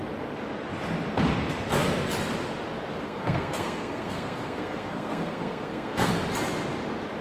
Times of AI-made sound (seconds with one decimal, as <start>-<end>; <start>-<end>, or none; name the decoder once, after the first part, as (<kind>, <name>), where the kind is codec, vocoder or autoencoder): 2.9-6.1 (codec, SNAC)